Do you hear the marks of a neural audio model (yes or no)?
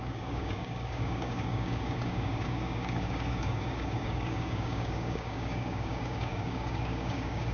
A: yes